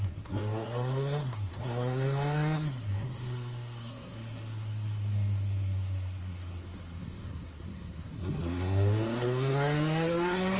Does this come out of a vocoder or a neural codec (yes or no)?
yes